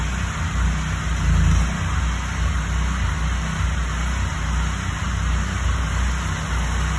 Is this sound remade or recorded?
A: recorded